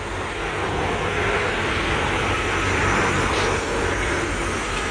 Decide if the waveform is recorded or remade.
recorded